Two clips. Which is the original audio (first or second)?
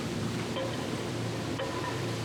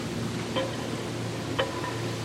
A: second